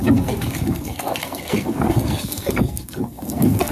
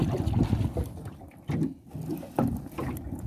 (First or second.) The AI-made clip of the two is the first